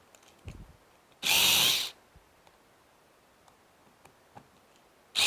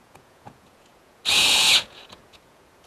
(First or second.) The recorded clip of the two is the first